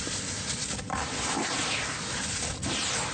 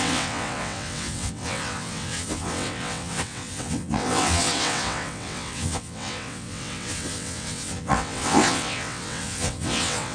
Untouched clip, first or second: first